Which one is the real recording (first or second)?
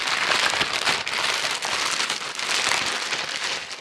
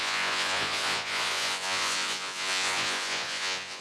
first